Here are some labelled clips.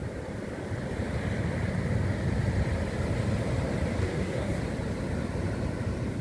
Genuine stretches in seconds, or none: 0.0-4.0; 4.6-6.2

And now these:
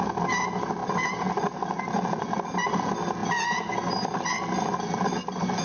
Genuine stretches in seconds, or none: 0.0-5.6